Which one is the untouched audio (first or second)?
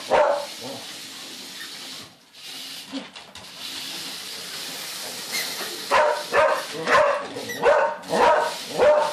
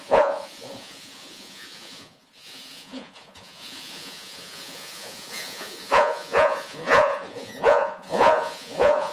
first